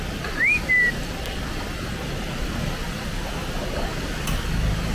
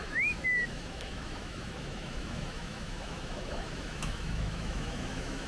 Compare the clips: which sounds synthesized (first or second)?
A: second